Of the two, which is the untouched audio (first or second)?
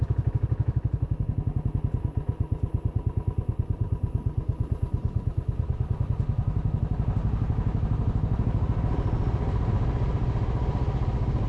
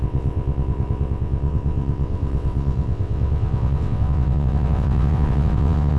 first